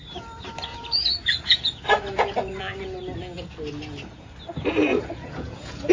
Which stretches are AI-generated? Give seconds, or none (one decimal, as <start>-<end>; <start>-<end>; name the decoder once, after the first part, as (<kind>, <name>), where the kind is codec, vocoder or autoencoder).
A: 0.7-2.6 (vocoder, Vocos); 4.9-5.9